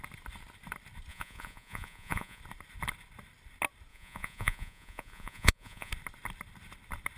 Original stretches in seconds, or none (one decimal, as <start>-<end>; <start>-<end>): 0.0-1.1; 2.4-3.9; 5.9-7.2